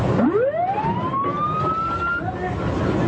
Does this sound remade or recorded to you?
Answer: recorded